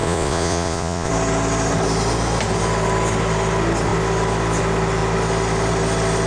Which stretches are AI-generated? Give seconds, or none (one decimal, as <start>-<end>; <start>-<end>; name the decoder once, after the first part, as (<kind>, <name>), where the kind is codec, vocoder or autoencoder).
0.0-1.1 (vocoder, Vocos)